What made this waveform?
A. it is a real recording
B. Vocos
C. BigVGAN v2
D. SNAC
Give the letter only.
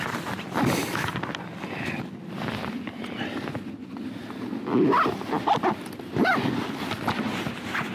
A